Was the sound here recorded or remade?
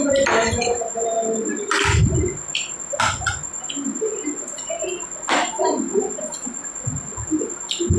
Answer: recorded